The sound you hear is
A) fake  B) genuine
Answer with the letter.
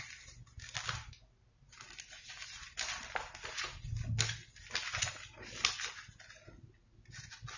B